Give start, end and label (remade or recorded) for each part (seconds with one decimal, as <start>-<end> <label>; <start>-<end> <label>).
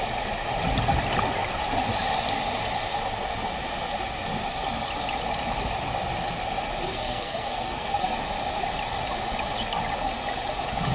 0.0-6.9 recorded; 6.9-8.2 remade; 8.2-10.9 recorded